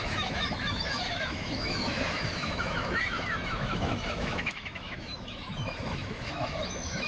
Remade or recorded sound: remade